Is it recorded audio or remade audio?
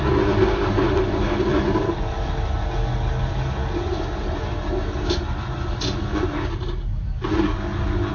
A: recorded